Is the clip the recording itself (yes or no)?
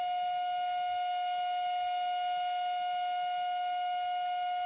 yes